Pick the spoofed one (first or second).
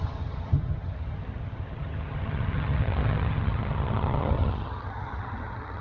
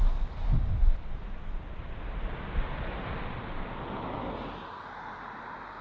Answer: first